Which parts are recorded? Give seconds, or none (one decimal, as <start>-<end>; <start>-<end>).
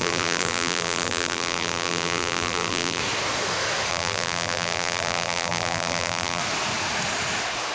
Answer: 3.0-3.9; 6.4-7.7